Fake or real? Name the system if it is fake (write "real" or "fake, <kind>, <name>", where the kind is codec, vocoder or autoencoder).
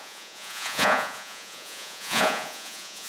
fake, vocoder, Vocos